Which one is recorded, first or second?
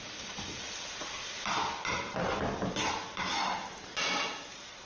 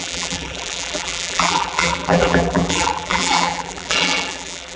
first